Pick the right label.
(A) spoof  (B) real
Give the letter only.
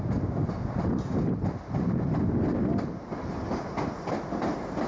B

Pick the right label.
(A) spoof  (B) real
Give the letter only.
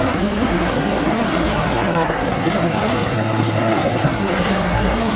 A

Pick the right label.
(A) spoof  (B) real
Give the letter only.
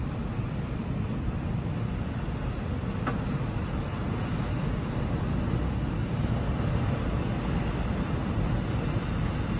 B